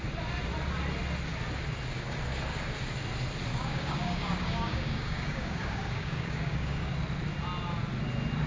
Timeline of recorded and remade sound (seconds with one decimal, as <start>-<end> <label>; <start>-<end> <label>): 0.0-3.5 recorded; 3.5-6.9 remade; 6.9-8.5 recorded